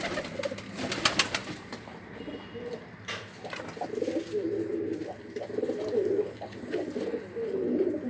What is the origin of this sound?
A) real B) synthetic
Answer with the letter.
A